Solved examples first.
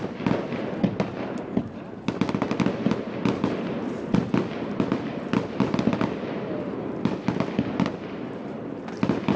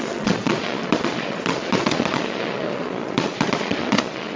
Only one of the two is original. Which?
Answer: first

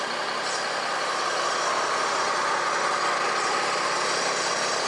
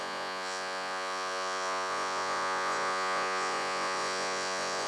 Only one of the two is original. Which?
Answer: first